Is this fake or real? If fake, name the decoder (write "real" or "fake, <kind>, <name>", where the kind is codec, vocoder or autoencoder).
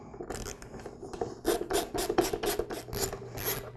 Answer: real